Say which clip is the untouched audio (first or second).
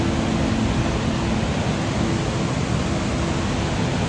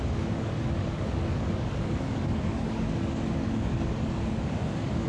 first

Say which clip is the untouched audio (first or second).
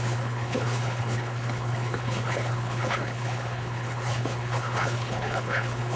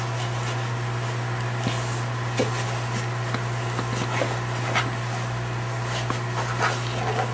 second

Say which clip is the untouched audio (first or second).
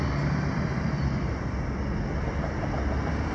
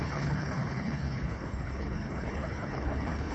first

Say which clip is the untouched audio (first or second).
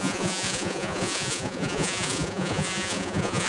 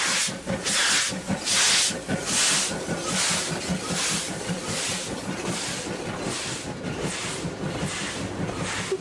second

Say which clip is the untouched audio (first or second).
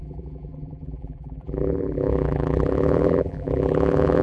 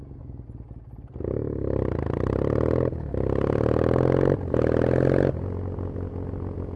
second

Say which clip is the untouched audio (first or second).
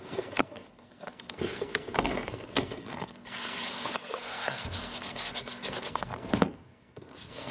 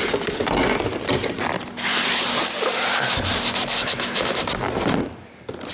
second